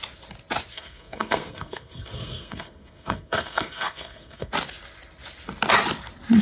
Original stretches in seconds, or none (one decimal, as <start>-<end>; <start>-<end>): 0.0-0.7; 4.5-6.4